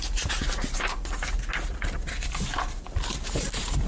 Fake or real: real